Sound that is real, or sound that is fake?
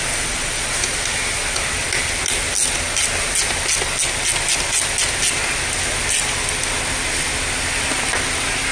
real